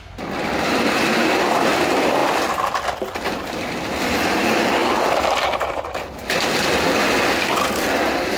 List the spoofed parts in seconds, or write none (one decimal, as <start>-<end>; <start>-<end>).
none